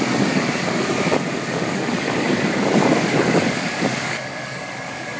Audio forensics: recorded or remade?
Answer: remade